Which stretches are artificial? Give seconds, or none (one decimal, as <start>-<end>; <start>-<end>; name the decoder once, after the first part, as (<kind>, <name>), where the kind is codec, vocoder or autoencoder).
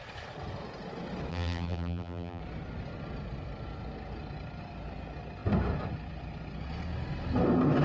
1.3-2.4 (vocoder, BigVGAN v2)